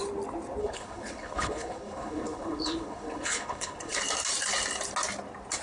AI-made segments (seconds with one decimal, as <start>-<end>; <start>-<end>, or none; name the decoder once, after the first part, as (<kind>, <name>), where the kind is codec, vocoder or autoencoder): 0.6-4.0 (codec, HILCodec)